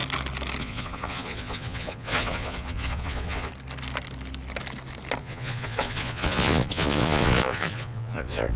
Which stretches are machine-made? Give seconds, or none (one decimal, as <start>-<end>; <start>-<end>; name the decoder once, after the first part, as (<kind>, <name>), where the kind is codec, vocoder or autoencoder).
0.6-3.5 (vocoder, Vocos); 5.2-8.6